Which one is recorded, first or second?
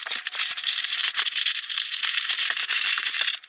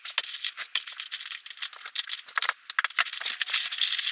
second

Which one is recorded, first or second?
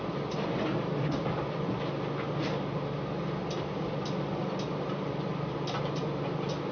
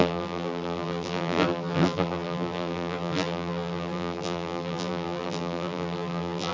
first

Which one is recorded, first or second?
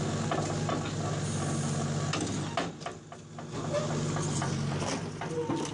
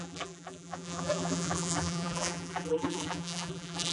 first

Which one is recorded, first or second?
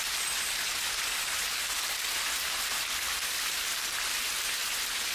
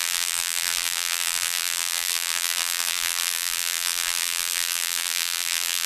first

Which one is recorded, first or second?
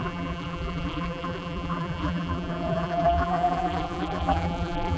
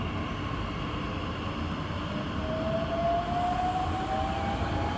second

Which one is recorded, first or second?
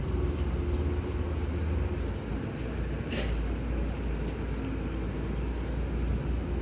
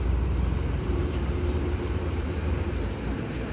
first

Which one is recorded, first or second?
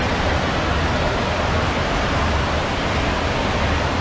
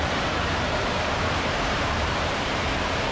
first